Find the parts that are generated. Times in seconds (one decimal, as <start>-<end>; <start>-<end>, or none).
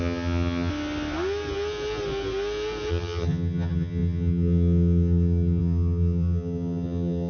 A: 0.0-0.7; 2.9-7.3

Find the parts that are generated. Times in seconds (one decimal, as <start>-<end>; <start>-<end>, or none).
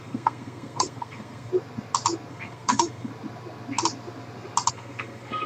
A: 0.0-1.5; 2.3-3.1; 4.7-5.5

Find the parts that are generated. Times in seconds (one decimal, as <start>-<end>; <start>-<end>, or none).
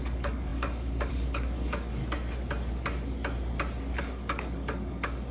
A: 0.0-2.0; 4.0-5.3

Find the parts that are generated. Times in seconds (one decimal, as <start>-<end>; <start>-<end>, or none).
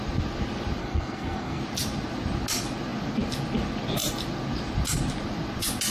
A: 0.8-1.6